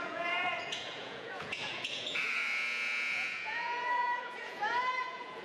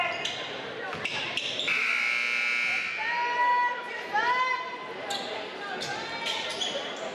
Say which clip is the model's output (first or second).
first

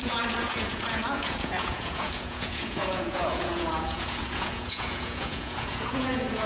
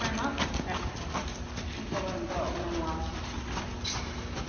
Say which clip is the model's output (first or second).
first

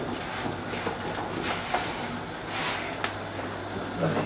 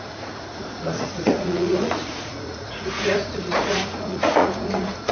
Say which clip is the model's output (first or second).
second